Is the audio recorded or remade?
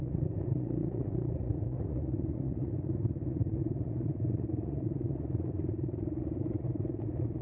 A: remade